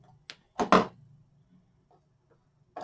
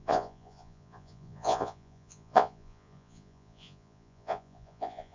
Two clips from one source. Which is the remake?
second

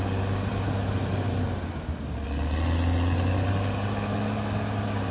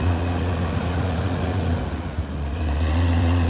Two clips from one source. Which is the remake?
second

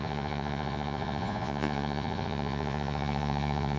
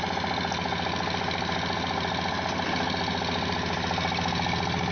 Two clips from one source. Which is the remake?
first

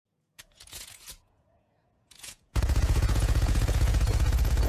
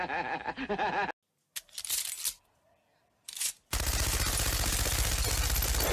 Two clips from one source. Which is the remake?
first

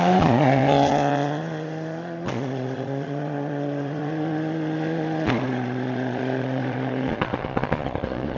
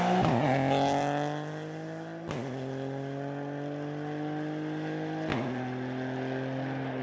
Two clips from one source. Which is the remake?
first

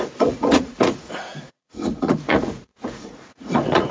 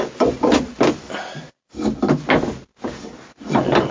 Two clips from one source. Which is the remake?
first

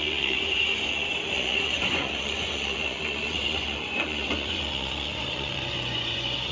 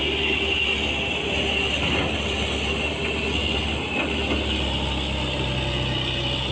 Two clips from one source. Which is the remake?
first